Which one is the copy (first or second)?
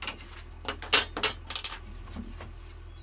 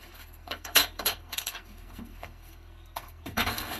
second